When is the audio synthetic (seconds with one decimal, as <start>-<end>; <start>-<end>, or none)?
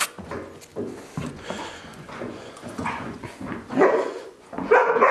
0.0-0.7; 1.2-5.1